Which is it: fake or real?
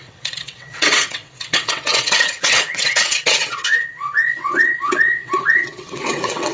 fake